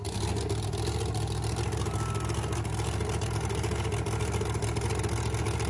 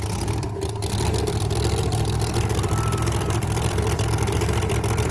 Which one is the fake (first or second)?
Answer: second